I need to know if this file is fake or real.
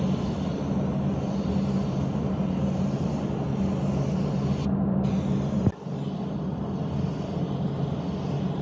real